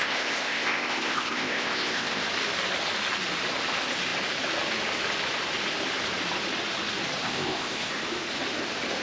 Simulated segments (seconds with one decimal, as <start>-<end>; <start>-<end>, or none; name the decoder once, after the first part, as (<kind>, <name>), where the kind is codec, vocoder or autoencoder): 0.0-2.2 (codec, ZipCodec); 7.2-7.9